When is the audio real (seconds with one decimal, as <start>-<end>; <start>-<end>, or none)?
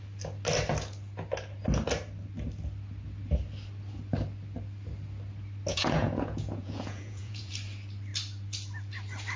0.0-5.7; 7.5-9.4